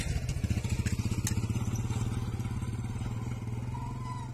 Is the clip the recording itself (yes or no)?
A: yes